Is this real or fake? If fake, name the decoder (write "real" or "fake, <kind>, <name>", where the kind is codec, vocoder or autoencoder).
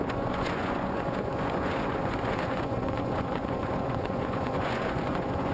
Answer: fake, vocoder, Vocos